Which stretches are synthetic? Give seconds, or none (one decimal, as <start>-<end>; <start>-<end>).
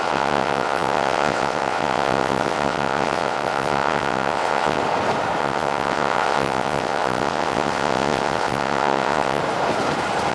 0.0-4.8; 5.4-9.4